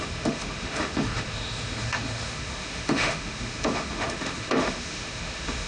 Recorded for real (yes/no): no